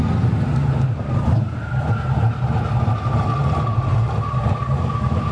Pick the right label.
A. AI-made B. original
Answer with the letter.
A